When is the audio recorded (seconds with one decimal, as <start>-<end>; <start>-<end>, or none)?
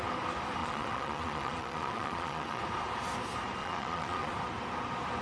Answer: 0.0-0.6; 2.6-3.6; 4.3-5.2